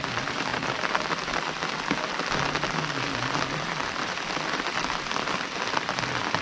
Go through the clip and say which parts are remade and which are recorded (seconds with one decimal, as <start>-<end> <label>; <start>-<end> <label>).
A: 0.0-6.4 recorded